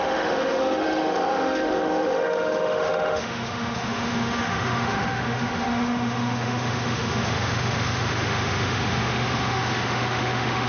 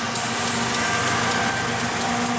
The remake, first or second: first